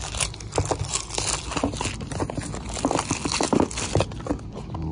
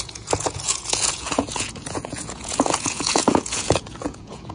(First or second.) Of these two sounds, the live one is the first